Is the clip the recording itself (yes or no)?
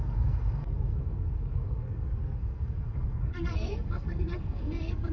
no